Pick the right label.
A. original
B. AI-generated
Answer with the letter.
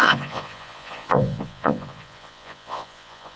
B